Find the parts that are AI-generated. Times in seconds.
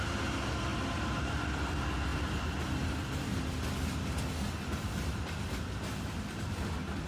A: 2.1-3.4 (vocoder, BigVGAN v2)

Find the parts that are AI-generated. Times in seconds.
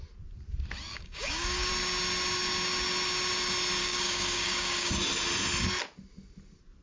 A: 0.9-1.7 (codec, DAC); 3.8-4.9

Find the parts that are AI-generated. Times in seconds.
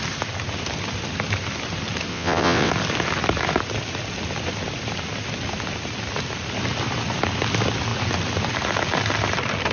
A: 2.1-2.7 (vocoder, WaveNeXt)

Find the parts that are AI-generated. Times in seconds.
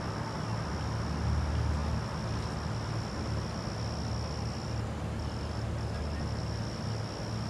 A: none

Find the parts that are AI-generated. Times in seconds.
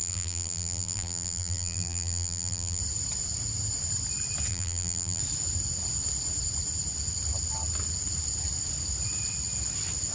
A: 0.0-2.8 (vocoder, BigVGAN v2); 4.5-5.2